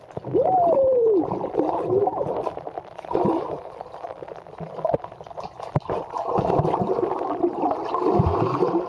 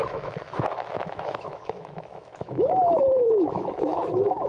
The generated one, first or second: second